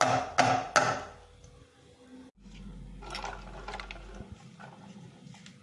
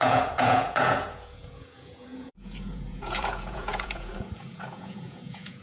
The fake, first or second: second